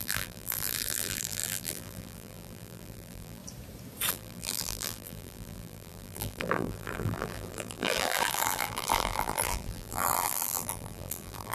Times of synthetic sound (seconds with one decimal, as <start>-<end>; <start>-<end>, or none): 0.0-3.4; 4.1-11.5